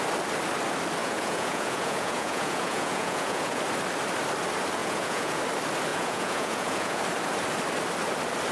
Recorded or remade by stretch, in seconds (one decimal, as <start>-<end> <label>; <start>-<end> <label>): 0.0-1.0 recorded; 1.0-3.6 remade; 3.6-4.8 recorded; 4.8-5.4 remade; 5.4-5.9 recorded; 5.9-7.0 remade; 7.0-8.5 recorded